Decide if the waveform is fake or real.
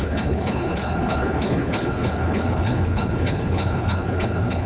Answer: fake